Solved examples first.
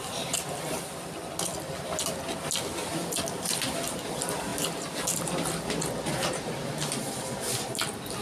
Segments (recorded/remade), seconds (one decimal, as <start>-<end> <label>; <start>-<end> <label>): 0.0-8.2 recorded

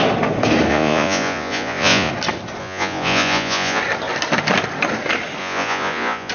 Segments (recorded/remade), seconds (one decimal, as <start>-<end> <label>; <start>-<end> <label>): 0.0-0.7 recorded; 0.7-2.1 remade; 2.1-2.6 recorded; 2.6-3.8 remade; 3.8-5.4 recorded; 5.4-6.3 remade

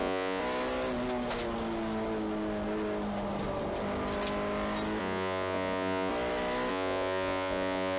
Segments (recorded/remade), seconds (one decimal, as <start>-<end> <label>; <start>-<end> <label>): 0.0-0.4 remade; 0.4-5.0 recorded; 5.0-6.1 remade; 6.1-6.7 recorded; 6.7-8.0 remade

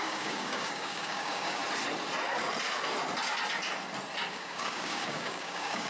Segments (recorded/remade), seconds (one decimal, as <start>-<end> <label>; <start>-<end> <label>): 0.0-1.6 remade; 1.6-4.3 recorded; 4.3-5.9 remade

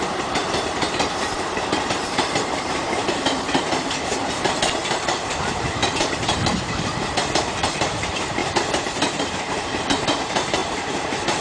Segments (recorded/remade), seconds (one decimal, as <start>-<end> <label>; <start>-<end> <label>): 0.0-8.4 remade; 8.4-9.2 recorded; 9.2-11.4 remade